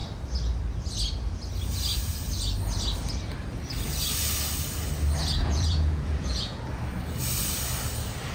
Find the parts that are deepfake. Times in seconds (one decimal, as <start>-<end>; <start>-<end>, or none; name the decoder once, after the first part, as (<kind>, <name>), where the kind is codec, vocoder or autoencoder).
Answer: 5.2-6.6 (vocoder, Vocos)